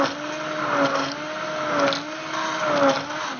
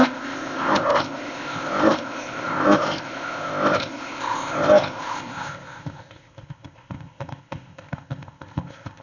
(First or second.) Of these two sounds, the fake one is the second